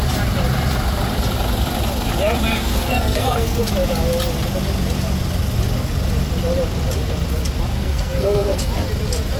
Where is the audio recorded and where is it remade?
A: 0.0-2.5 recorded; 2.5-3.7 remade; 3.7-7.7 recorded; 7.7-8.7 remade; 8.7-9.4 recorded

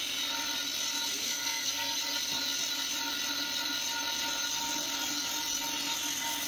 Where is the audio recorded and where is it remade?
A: 0.0-1.2 recorded; 1.2-2.0 remade; 2.0-6.5 recorded

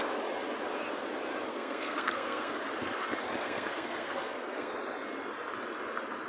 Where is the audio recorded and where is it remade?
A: 0.0-1.5 recorded; 1.5-2.5 remade; 2.5-3.4 recorded; 3.4-4.7 remade; 4.7-6.3 recorded

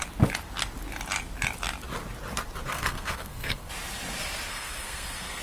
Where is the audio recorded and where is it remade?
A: 0.0-2.7 recorded; 2.7-3.7 remade; 3.7-4.5 recorded; 4.5-5.4 remade